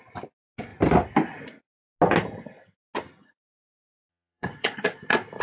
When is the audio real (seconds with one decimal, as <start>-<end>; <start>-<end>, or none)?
0.0-4.1; 5.0-5.4